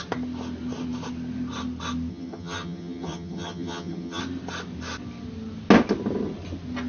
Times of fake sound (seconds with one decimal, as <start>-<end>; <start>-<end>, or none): 2.1-4.2